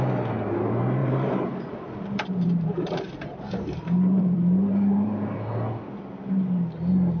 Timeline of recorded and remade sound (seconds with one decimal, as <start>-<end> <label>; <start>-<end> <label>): 0.0-1.0 recorded; 1.0-5.3 remade; 5.3-7.2 recorded

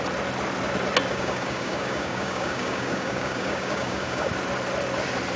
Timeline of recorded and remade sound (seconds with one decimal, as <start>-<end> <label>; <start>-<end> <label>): 0.0-1.1 recorded; 1.1-4.3 remade; 4.3-5.4 recorded

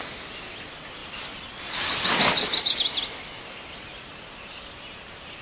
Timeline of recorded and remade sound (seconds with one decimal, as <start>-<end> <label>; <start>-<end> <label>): 0.0-5.4 recorded

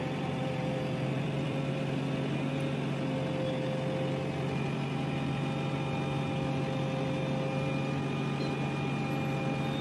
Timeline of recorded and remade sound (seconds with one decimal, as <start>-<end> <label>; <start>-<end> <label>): 0.0-1.8 remade; 1.8-9.8 recorded